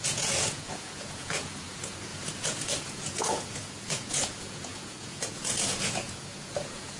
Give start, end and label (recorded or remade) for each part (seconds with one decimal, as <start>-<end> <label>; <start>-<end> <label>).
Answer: 0.0-7.0 remade